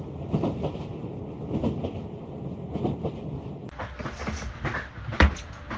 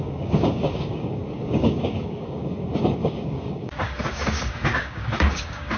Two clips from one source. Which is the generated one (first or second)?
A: second